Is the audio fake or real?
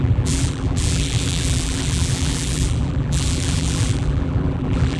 fake